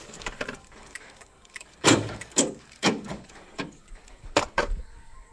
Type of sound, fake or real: fake